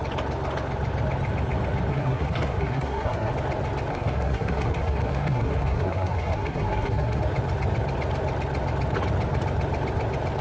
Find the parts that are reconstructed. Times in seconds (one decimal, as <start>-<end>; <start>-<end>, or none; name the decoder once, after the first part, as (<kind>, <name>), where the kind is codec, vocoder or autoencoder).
1.9-3.3 (codec, SNAC); 3.9-7.2